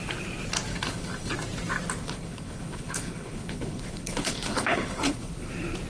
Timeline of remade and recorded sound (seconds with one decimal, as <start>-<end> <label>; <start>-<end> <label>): 0.0-0.7 recorded; 0.7-1.3 remade; 1.3-2.0 recorded; 2.0-5.5 remade; 5.5-5.9 recorded

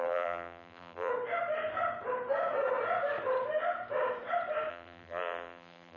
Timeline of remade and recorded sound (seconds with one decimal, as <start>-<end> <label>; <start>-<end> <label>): 0.0-1.1 remade; 1.1-4.7 recorded; 4.7-6.0 remade

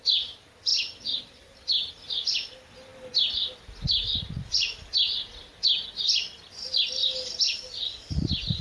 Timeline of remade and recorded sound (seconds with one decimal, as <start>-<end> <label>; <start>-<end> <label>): 0.0-8.6 recorded